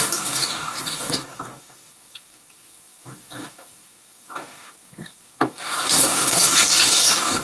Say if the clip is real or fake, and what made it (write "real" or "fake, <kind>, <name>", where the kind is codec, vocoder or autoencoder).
fake, codec, DAC